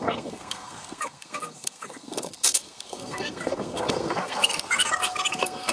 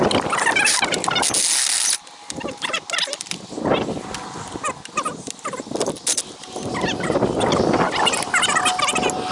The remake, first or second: first